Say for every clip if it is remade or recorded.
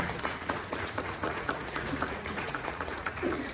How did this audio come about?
remade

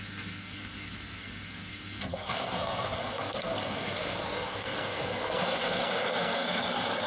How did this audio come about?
remade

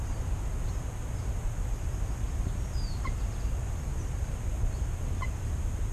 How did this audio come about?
recorded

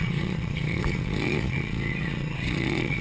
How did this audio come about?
remade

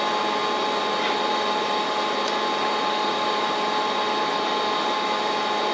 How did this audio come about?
recorded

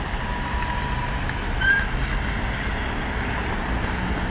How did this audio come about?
recorded